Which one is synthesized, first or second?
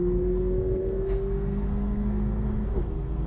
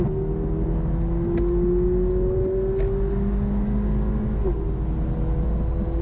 first